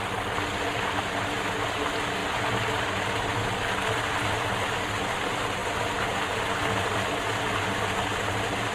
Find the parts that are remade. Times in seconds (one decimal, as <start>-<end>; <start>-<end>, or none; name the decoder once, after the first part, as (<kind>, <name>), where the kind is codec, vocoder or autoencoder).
none